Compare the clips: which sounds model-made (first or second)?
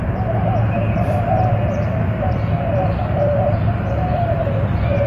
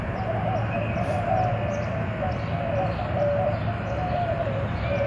first